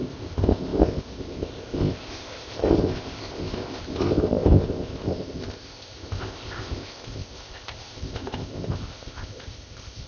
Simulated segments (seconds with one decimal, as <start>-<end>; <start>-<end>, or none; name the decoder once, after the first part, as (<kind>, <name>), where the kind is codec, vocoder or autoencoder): 0.0-10.1 (codec, ZipCodec)